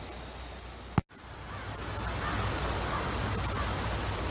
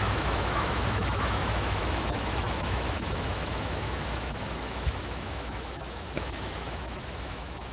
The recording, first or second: first